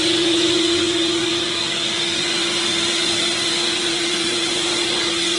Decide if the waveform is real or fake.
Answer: fake